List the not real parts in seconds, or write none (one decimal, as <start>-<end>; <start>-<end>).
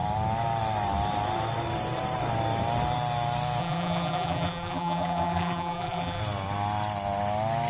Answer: 3.6-6.2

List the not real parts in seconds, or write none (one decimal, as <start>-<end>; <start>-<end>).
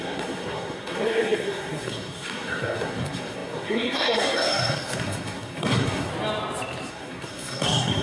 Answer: 0.0-6.1; 6.9-8.0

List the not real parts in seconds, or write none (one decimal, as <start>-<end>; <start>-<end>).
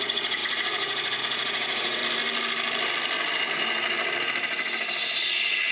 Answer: 0.0-2.0; 5.2-5.7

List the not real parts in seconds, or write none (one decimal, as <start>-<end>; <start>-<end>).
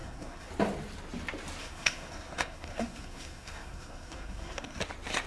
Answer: 0.0-0.5; 1.6-4.8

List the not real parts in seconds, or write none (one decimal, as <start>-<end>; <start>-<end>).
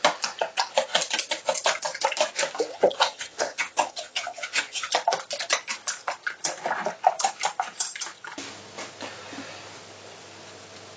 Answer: 2.7-4.9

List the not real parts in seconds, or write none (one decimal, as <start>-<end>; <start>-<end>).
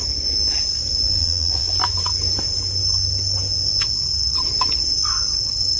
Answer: 1.2-1.7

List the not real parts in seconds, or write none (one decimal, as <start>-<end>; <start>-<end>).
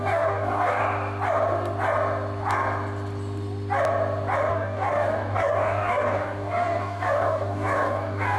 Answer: 0.0-0.8; 4.5-8.4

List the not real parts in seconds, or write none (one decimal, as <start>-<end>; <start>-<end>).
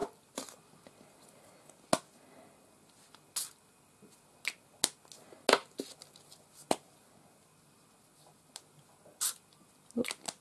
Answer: none